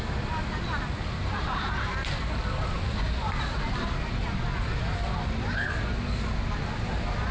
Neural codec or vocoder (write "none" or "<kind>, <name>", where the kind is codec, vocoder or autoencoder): none